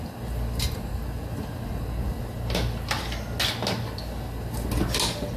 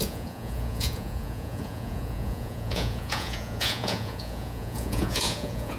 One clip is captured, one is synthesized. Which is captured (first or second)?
first